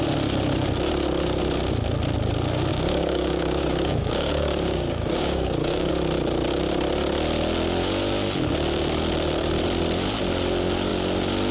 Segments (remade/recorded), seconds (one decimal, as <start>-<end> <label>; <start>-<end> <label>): 0.0-2.7 recorded; 2.7-5.9 remade; 5.9-11.5 recorded